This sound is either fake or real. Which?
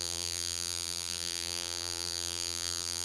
fake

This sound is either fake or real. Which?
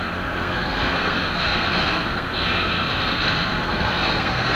fake